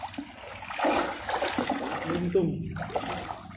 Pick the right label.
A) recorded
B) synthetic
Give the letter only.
A